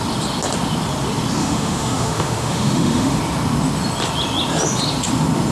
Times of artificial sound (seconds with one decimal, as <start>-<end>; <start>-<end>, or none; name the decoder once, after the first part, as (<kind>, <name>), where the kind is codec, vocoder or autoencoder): 1.4-3.2 (autoencoder, DAC-VAE)